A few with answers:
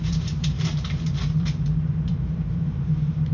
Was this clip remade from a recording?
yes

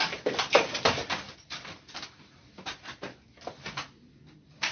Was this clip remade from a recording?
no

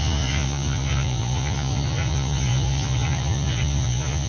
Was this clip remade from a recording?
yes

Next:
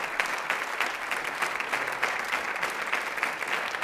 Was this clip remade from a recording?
no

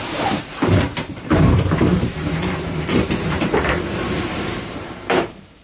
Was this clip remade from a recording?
yes